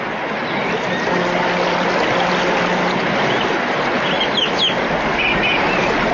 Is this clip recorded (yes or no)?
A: yes